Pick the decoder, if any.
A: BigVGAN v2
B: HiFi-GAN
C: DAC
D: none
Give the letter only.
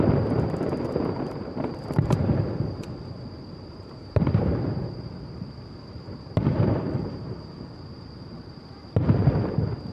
A